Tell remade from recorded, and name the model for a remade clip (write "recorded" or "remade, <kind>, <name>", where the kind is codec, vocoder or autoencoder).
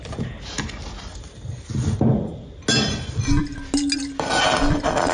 recorded